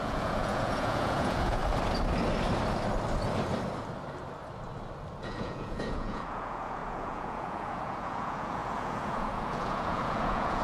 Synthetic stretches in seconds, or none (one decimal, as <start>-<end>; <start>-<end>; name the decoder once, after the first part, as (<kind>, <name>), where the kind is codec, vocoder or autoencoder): 0.0-1.6 (vocoder, Vocos); 5.2-10.6